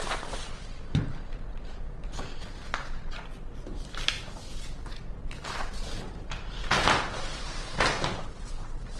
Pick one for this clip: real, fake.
real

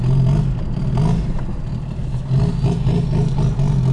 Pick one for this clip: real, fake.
real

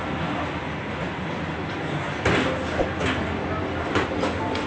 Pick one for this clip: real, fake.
real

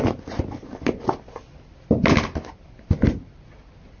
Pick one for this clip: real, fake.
real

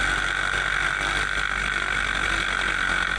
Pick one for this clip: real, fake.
real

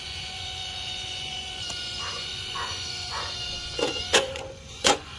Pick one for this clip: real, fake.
fake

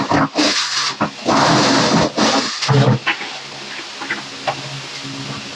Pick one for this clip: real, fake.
real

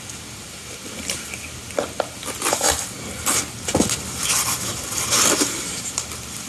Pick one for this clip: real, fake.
real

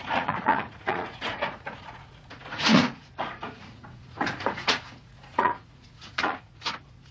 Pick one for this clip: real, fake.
fake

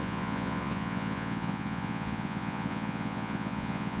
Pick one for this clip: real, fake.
fake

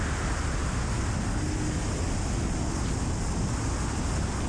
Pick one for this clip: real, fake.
real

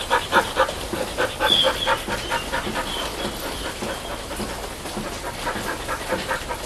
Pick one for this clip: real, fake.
real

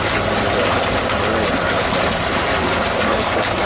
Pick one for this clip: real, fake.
real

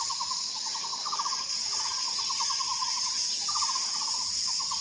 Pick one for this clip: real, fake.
real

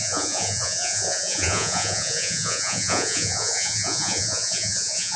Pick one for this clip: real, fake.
fake